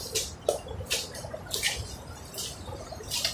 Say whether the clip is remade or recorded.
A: recorded